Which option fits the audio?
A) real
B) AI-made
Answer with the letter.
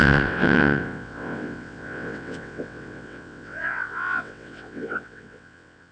B